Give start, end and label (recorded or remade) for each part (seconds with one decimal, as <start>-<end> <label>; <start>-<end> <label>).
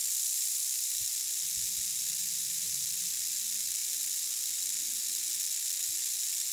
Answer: 0.0-1.1 remade; 1.1-2.2 recorded; 2.2-3.1 remade; 3.1-3.8 recorded; 3.8-4.6 remade; 4.6-6.5 recorded